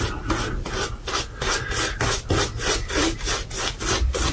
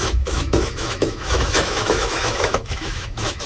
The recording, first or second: first